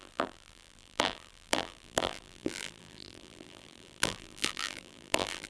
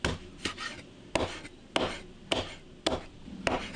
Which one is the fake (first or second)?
first